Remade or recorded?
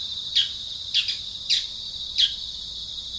recorded